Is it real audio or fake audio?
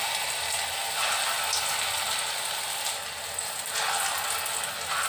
real